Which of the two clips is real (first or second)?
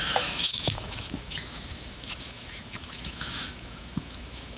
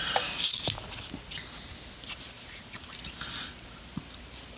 second